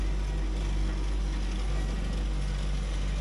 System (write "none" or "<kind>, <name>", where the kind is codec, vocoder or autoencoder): none